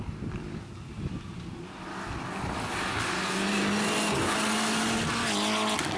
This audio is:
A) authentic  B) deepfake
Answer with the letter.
A